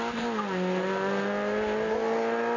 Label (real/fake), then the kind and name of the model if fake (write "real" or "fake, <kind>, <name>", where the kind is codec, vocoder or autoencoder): real